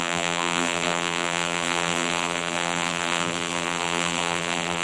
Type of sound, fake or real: fake